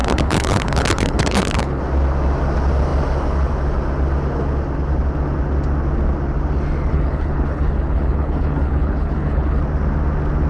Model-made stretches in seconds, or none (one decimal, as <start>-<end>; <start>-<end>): 0.0-1.8; 6.9-9.6